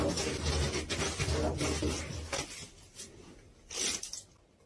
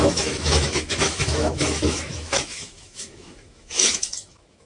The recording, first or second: first